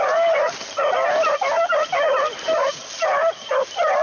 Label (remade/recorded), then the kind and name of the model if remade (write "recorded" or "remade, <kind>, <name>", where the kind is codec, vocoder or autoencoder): recorded